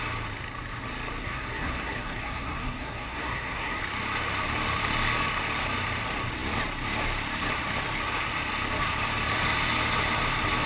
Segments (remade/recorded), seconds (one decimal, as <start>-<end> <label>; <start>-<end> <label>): 0.0-1.2 recorded; 1.2-3.8 remade; 3.8-10.7 recorded